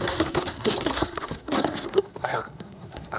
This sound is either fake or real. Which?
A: fake